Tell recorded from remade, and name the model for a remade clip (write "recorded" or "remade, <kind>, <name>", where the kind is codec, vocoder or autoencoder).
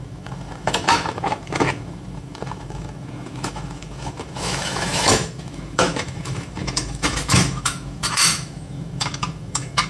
remade, autoencoder, DAC-VAE